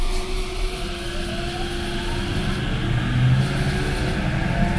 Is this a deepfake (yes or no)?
no